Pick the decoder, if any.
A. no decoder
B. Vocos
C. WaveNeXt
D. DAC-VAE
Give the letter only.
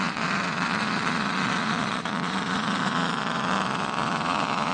B